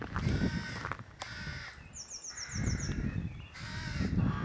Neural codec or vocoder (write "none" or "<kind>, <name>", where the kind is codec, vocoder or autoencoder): none